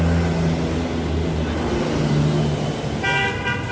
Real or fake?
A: real